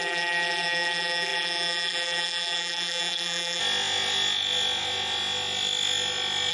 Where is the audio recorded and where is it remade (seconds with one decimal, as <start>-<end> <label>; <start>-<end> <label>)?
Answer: 0.0-3.6 remade; 3.6-6.5 recorded